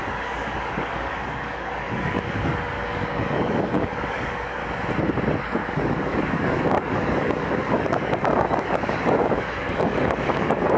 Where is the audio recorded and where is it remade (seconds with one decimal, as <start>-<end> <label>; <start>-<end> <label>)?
0.0-4.6 remade; 4.6-5.4 recorded; 5.4-10.8 remade